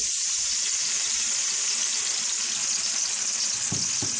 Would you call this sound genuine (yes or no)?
yes